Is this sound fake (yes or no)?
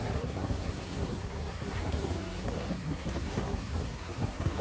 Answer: yes